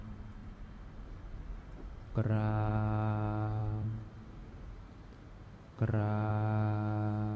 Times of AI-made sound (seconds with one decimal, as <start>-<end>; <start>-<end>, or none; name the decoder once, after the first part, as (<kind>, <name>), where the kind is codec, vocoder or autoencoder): 0.4-2.7 (vocoder, BigVGAN v2); 3.6-6.3